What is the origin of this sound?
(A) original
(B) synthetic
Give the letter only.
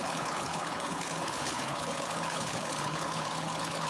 B